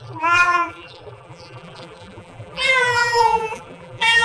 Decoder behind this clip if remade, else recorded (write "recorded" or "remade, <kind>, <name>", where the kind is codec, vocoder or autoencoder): remade, vocoder, BigVGAN v2